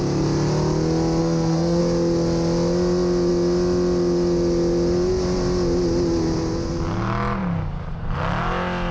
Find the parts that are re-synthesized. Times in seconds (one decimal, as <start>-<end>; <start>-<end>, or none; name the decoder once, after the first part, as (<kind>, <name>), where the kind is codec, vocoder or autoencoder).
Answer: 1.2-1.8 (codec, SNAC)